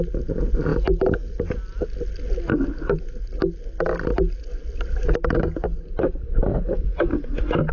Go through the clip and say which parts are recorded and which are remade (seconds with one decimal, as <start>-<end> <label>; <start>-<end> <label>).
0.0-7.7 recorded